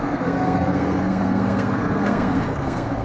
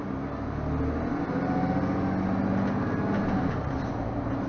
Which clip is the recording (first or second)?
second